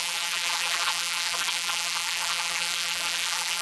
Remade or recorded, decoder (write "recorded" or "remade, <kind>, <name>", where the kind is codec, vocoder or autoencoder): remade, vocoder, BigVGAN v2